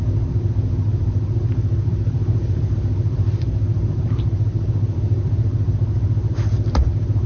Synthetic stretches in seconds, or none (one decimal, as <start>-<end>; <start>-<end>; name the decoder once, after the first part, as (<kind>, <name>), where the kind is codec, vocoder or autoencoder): 0.0-7.3 (vocoder, BigVGAN v2)